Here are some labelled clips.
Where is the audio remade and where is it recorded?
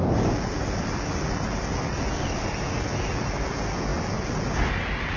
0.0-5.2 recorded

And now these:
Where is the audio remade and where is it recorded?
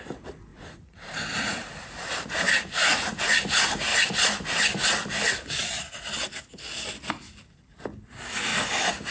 0.0-0.5 recorded; 0.5-3.2 remade; 3.2-9.1 recorded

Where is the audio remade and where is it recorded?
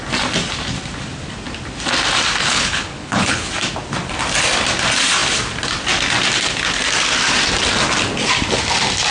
0.0-2.4 recorded; 2.4-3.5 remade; 3.5-9.1 recorded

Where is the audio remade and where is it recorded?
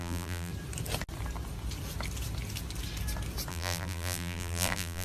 0.0-0.5 remade; 0.5-3.5 recorded; 3.5-5.0 remade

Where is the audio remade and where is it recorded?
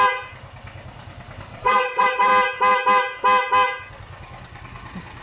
0.0-1.5 recorded; 1.5-2.3 remade; 2.3-5.2 recorded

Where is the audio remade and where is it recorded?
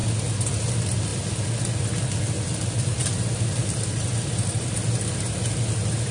0.0-6.1 recorded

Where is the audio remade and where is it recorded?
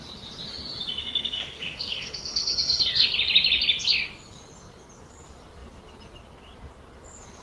0.0-1.0 recorded; 1.0-3.1 remade; 3.1-7.4 recorded